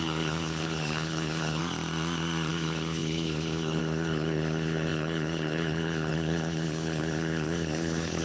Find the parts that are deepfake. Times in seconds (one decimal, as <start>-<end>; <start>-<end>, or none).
0.0-1.6; 2.5-8.2